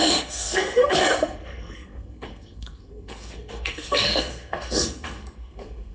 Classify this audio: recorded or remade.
remade